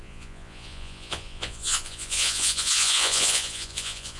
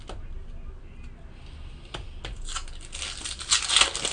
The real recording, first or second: second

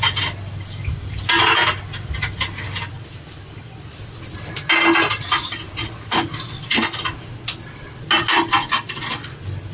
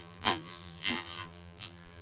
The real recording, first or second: first